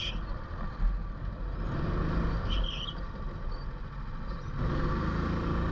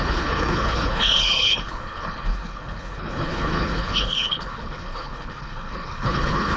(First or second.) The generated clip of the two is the second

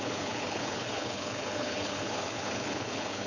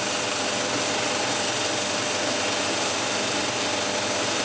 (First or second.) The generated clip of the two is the first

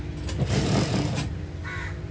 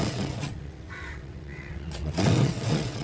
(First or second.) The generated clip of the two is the second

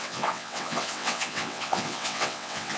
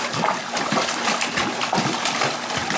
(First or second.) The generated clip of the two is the first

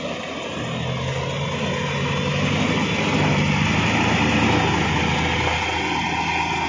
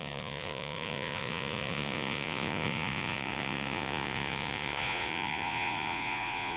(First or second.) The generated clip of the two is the second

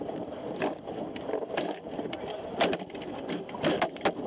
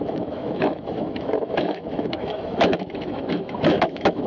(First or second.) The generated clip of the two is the second